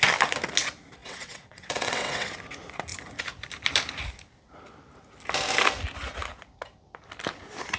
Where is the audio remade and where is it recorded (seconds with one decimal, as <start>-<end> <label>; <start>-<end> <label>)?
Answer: 0.0-1.0 recorded; 1.0-2.3 remade; 2.3-7.8 recorded

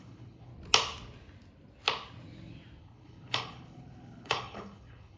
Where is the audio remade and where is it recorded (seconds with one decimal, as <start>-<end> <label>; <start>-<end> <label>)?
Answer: 0.0-0.5 remade; 0.5-2.8 recorded; 2.8-5.2 remade